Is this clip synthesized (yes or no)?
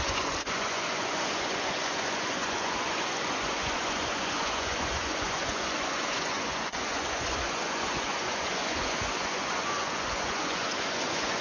yes